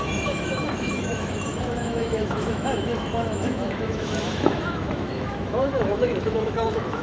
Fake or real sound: fake